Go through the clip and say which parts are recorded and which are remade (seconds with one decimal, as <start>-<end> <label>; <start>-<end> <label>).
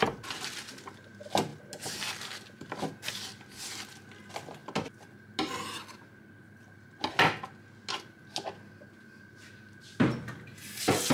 0.0-11.1 recorded